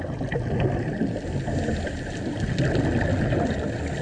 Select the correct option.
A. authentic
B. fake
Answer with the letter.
A